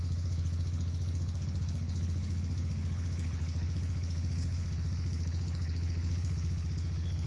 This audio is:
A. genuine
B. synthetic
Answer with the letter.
B